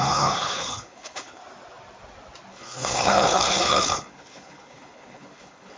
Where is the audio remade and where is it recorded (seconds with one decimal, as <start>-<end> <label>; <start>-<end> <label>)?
0.0-1.4 remade; 1.4-2.5 recorded; 2.5-5.8 remade